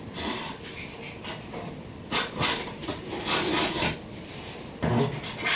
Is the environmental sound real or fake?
real